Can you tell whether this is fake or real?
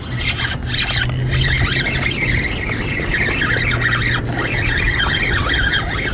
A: real